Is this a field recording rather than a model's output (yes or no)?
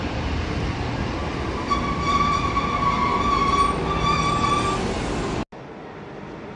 yes